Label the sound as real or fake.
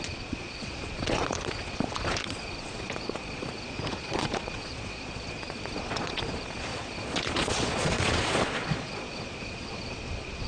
fake